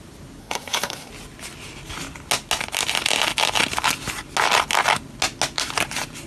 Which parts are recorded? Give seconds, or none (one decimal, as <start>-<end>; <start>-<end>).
0.0-0.4; 1.1-6.3